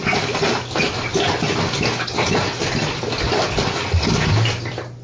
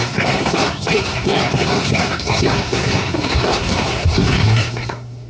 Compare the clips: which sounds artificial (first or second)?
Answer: second